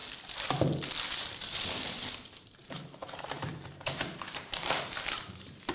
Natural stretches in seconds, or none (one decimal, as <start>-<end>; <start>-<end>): 0.0-2.3